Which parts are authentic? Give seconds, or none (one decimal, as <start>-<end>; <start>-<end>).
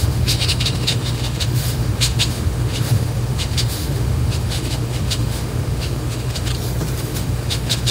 6.5-7.0